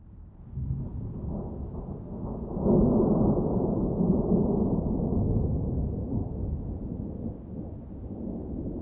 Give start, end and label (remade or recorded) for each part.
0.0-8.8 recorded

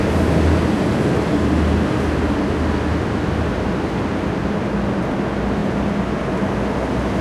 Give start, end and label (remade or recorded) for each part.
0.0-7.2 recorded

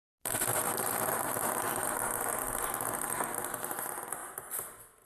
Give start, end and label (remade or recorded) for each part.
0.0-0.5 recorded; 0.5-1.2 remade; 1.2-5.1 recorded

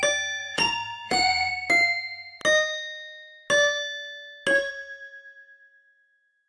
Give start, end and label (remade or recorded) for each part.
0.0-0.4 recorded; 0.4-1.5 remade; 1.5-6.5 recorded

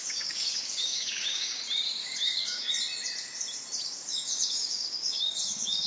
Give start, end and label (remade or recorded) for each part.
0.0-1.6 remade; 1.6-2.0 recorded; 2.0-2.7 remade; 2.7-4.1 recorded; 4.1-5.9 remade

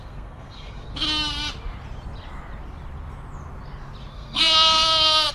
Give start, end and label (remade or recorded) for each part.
0.0-0.9 remade; 0.9-4.1 recorded; 4.1-5.3 remade

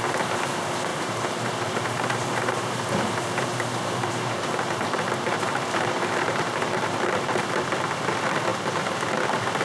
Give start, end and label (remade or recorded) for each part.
0.0-0.9 recorded; 0.9-2.8 remade; 2.8-4.0 recorded; 4.0-7.7 remade; 7.7-9.6 recorded